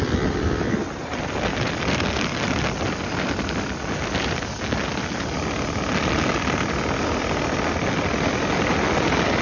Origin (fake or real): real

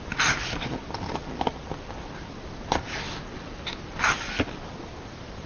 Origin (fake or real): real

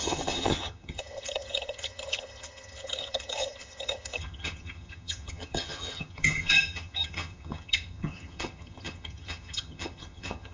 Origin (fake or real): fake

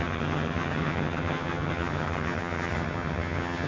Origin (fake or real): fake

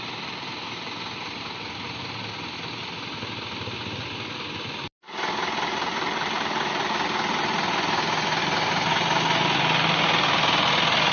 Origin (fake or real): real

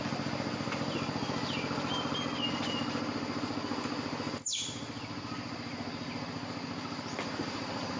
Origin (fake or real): real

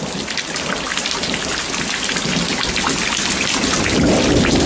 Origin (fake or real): real